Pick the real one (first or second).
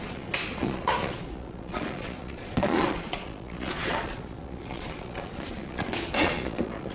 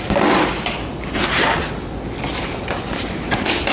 second